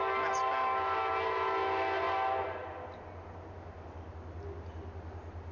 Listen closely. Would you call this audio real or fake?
real